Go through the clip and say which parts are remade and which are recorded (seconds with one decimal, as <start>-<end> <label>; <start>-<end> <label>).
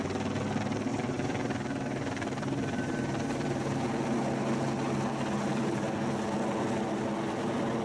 0.0-0.9 recorded; 0.9-3.8 remade; 3.8-7.8 recorded